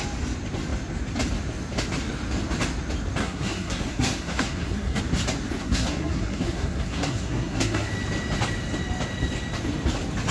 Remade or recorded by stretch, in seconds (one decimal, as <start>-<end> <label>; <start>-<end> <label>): 0.0-3.2 recorded; 3.2-5.0 remade; 5.0-5.6 recorded; 5.6-7.9 remade; 7.9-10.3 recorded